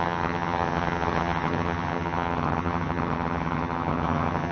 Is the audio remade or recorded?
remade